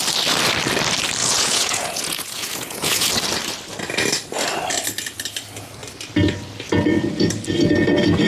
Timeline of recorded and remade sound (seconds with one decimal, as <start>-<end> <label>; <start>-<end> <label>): 0.0-1.2 recorded; 1.2-3.1 remade; 3.1-8.3 recorded